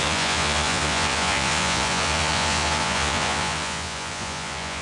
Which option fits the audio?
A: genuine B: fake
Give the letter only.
B